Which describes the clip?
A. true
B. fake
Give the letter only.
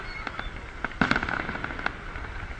A